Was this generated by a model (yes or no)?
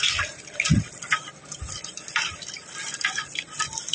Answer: yes